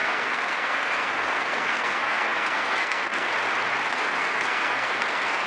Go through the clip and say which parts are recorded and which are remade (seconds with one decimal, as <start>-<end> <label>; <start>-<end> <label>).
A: 0.0-3.3 remade; 3.3-3.9 recorded; 3.9-5.5 remade